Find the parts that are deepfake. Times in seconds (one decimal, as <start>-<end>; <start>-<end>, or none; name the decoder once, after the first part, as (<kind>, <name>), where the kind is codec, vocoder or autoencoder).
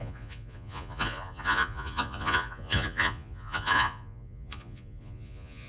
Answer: 0.0-5.7 (vocoder, Vocos)